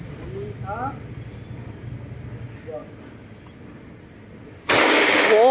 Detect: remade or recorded recorded